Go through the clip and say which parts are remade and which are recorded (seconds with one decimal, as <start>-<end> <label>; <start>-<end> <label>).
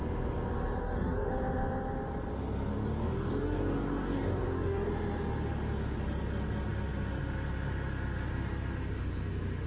0.0-0.8 recorded; 0.8-1.3 remade; 1.3-2.7 recorded; 2.7-4.9 remade; 4.9-9.7 recorded